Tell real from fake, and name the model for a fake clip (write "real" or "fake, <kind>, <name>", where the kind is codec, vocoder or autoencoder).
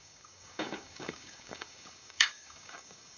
fake, codec, DAC